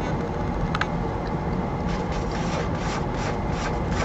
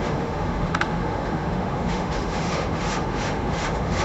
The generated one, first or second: second